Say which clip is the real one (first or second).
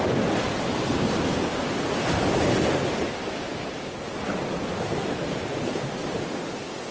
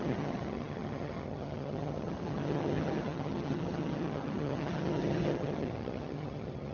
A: first